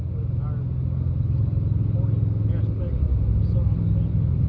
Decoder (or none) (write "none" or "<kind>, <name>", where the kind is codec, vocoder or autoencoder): none